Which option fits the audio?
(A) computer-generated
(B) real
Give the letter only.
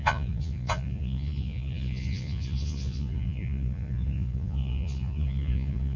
A